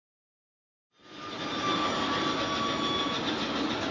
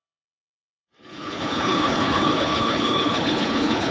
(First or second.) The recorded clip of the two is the first